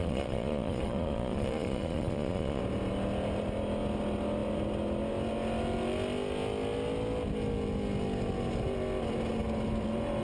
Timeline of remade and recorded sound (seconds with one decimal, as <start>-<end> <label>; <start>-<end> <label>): 0.0-2.6 remade; 2.6-10.2 recorded

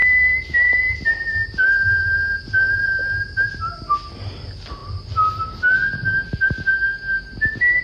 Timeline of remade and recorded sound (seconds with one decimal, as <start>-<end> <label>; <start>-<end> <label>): 0.0-7.8 recorded

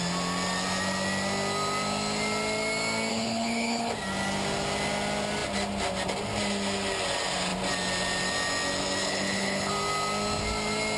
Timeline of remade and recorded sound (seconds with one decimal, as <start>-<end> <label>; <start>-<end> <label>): 0.0-3.1 recorded; 3.1-3.9 remade; 3.9-9.0 recorded; 9.0-9.7 remade; 9.7-11.0 recorded

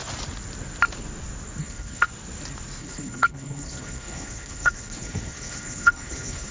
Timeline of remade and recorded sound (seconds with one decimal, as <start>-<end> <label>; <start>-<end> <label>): 0.0-1.6 recorded; 1.6-2.1 remade; 2.1-2.8 recorded; 2.8-6.5 remade